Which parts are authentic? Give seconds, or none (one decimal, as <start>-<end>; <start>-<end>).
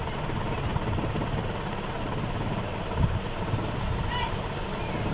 0.0-5.1